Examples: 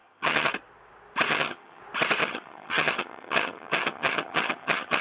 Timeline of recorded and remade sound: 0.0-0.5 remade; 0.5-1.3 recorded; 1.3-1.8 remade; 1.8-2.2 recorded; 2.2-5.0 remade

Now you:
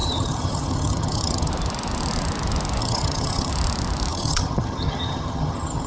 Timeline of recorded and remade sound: 0.0-1.5 remade; 1.5-2.8 recorded; 2.8-3.5 remade; 3.5-4.1 recorded; 4.1-5.9 remade

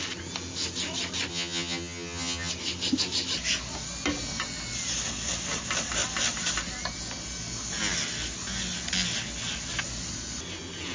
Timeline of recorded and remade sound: 0.0-1.3 recorded; 1.3-2.5 remade; 2.5-10.9 recorded

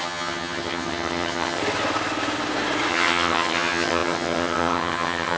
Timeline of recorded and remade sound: 0.0-1.6 remade; 1.6-2.9 recorded; 2.9-5.4 remade